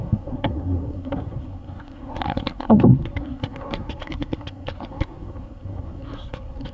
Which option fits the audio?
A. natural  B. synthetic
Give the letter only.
B